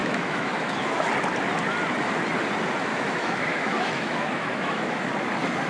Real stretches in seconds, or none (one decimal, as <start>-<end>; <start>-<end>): 1.1-2.9; 5.0-5.7